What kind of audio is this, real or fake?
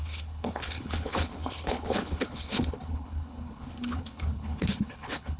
fake